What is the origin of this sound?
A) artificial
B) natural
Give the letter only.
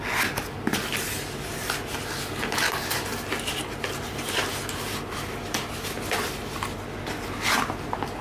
B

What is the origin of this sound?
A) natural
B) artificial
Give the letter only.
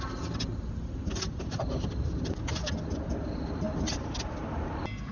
A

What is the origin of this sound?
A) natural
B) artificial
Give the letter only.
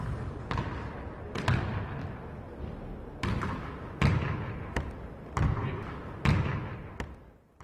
A